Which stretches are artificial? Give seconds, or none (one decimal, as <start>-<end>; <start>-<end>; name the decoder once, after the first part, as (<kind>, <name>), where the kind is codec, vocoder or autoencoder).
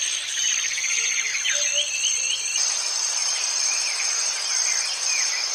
3.2-4.5 (vocoder, BigVGAN v2)